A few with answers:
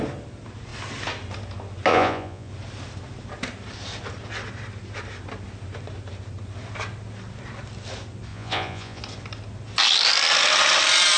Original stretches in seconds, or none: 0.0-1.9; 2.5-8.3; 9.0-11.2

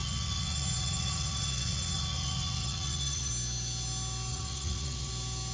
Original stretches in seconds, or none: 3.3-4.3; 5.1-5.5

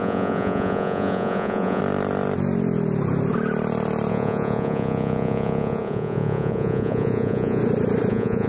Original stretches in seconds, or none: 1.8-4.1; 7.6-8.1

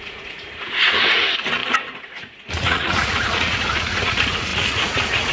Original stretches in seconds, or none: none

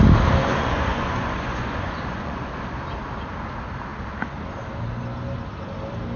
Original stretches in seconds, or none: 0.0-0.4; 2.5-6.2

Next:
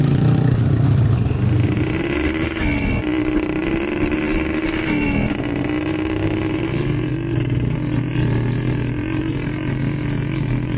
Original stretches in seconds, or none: 0.0-10.8